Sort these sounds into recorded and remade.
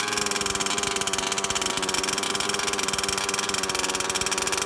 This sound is recorded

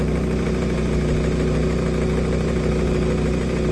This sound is recorded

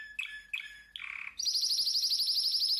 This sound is recorded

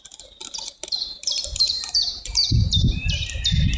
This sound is remade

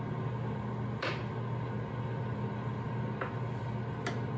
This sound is recorded